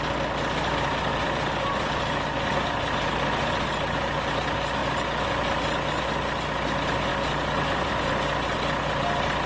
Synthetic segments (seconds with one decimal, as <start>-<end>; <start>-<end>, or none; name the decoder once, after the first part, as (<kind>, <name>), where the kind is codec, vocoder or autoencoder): 1.1-3.1 (vocoder, BigVGAN v2)